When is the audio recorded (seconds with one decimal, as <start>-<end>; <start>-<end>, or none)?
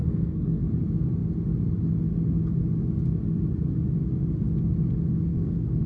0.7-5.3